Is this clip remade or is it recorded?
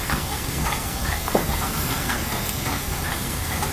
remade